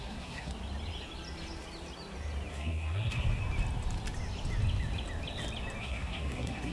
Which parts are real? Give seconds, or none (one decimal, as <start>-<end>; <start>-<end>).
0.5-2.5; 3.4-5.8